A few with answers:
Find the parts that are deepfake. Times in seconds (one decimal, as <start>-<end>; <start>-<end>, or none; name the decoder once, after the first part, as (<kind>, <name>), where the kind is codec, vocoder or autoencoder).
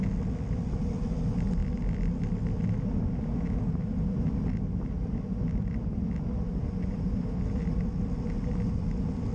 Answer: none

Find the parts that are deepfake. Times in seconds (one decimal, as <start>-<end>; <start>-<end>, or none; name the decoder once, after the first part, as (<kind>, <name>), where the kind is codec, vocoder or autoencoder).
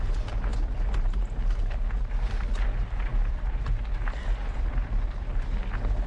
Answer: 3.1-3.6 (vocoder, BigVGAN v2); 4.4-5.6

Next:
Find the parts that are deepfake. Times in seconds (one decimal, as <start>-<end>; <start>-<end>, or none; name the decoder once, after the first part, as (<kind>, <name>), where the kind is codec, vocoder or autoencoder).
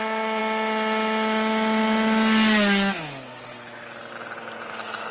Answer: none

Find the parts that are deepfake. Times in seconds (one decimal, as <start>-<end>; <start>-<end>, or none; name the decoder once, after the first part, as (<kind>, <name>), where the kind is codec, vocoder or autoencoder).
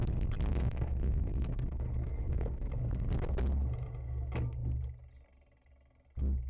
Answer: 0.5-2.7 (codec, SNAC)